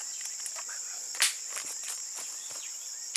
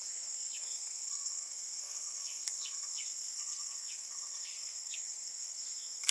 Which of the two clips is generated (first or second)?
second